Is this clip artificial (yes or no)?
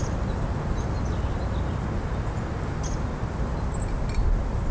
no